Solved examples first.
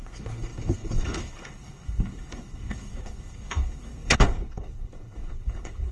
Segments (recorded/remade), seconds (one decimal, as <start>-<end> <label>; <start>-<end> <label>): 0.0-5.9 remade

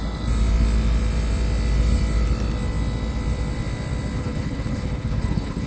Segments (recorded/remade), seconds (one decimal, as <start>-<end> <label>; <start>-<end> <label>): 0.0-4.2 recorded; 4.2-5.7 remade

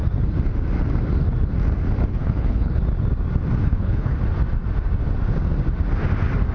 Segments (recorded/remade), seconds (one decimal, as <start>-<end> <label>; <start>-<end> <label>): 0.0-2.1 recorded; 2.1-2.8 remade; 2.8-3.6 recorded; 3.6-4.2 remade; 4.2-6.5 recorded